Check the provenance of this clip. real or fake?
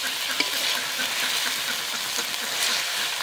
real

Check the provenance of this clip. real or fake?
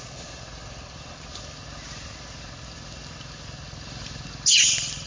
real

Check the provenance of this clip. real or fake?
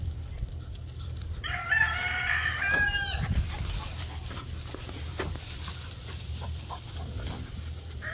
fake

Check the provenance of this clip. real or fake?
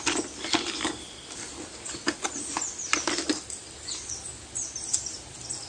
fake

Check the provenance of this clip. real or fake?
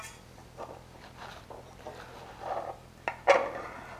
real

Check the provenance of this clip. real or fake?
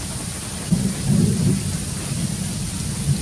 real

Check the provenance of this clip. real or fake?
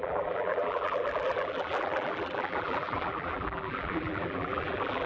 fake